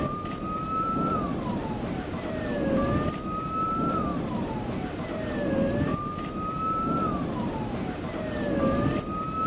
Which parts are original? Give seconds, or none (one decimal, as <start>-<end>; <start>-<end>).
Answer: none